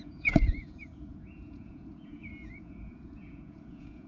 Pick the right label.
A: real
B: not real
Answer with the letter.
B